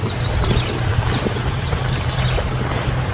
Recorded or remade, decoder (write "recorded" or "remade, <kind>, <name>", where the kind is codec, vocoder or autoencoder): recorded